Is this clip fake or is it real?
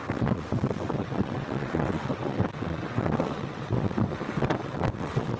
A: fake